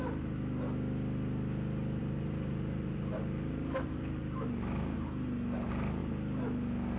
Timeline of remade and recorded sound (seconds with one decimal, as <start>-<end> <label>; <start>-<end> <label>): 0.0-2.0 recorded; 2.0-4.2 remade; 4.2-7.0 recorded